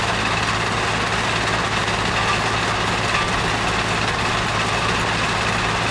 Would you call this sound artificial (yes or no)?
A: no